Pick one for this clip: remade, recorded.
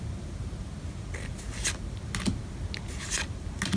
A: recorded